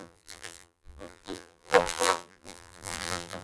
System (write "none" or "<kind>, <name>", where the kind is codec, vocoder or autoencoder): vocoder, BigVGAN v2